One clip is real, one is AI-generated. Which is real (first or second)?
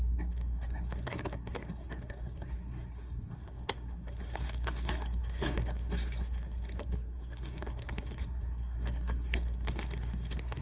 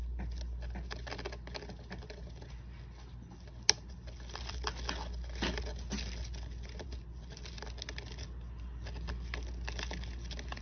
second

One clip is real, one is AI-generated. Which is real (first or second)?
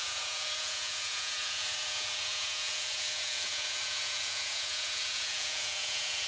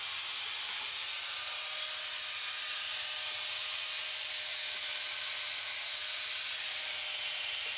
second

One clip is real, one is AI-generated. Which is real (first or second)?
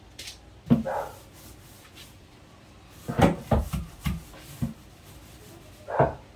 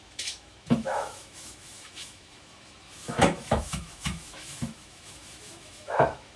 first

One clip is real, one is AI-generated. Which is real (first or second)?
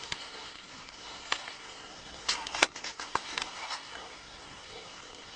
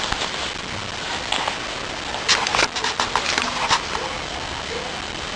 second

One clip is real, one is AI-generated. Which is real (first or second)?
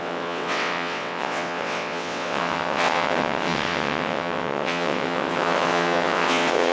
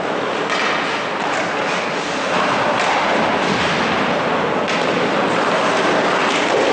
second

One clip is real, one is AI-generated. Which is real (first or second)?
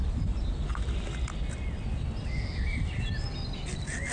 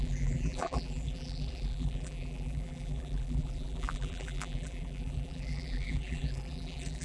first